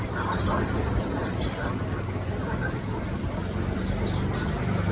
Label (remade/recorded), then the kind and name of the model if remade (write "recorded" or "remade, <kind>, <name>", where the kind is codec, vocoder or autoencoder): recorded